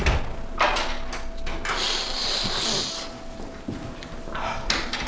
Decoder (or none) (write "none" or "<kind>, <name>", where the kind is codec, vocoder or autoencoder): none